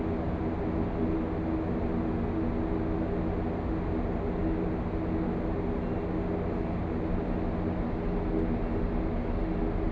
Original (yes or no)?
yes